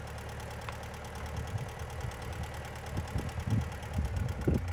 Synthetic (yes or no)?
no